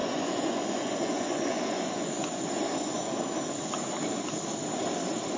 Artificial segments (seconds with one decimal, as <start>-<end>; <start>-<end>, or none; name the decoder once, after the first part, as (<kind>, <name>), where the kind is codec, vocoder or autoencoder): 0.0-3.2 (vocoder, Vocos)